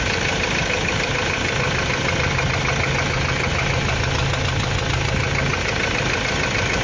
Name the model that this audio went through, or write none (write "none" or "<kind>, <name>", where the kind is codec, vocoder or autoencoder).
none